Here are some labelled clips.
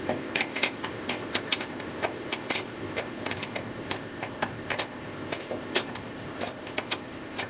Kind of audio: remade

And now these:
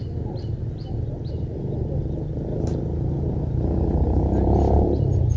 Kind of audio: recorded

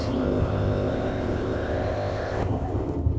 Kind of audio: remade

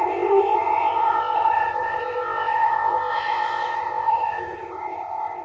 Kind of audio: remade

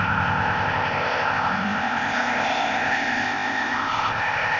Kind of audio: remade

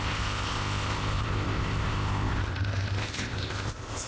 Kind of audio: remade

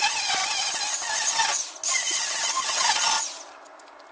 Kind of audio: recorded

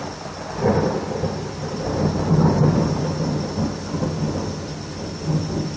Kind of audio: recorded